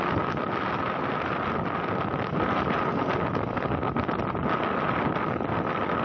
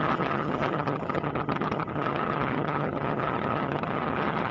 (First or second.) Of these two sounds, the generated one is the second